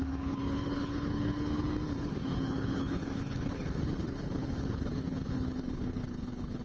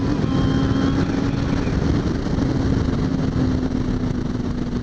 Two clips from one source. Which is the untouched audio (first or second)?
second